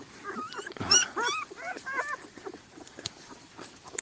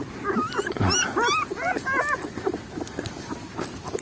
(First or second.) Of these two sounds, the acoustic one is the second